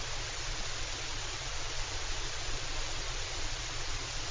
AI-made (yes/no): yes